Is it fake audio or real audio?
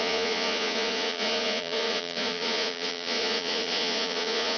fake